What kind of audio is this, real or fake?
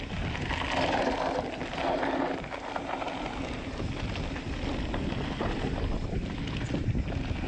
real